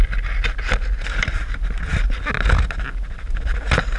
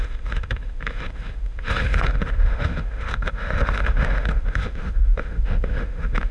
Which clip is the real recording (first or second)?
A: first